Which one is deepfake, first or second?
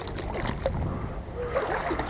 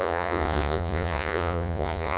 second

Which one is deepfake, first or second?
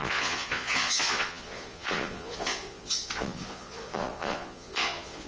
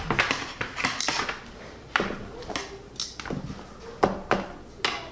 first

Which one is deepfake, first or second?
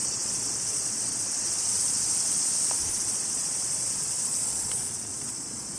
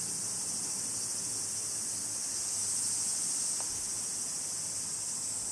first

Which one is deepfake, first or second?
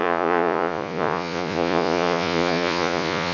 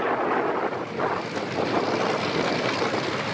first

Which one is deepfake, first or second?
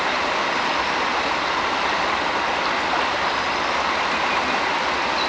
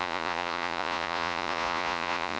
second